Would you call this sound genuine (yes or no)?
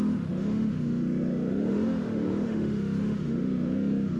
no